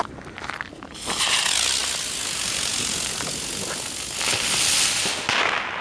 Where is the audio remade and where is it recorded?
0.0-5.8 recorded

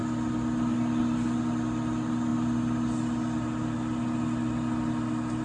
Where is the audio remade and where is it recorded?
0.0-5.4 recorded

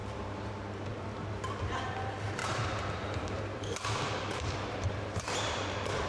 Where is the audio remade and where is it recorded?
0.0-0.5 remade; 0.5-2.4 recorded; 2.4-6.1 remade

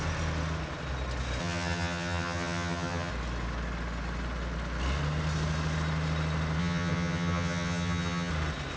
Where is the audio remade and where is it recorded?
0.0-1.4 recorded; 1.4-3.1 remade; 3.1-6.6 recorded; 6.6-8.3 remade; 8.3-8.8 recorded